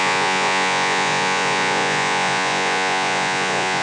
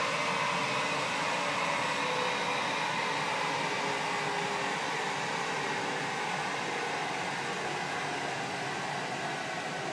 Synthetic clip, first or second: first